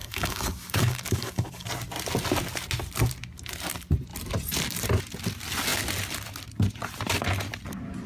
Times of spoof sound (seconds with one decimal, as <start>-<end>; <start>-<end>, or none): 0.0-1.7